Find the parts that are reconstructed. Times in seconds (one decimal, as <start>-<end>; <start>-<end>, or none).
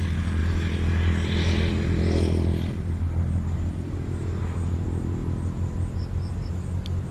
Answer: none